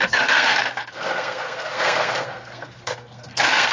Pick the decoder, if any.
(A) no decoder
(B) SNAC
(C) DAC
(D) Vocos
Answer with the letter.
B